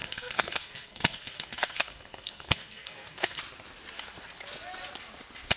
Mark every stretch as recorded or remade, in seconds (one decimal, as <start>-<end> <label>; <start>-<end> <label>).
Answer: 0.0-3.4 remade; 3.4-5.6 recorded